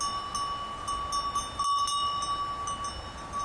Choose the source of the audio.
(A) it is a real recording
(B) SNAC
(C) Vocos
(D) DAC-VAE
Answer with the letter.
A